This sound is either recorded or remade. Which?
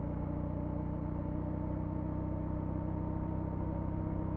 recorded